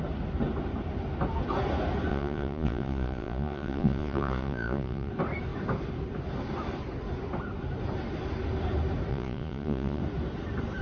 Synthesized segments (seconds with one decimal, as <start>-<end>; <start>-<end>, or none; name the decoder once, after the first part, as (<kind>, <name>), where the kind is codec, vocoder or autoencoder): 2.1-5.1 (vocoder, Vocos); 9.1-10.0